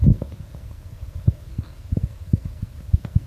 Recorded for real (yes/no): no